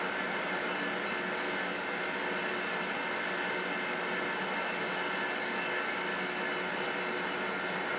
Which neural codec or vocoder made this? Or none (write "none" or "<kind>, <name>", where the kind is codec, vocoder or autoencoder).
none